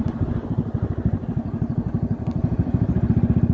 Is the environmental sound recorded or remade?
recorded